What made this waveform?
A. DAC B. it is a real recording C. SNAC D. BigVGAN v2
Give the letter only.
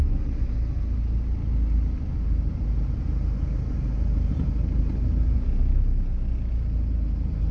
B